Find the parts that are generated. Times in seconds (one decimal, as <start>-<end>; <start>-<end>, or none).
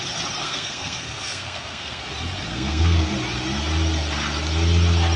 0.4-2.0; 2.5-3.1